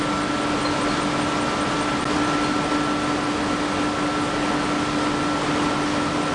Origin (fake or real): real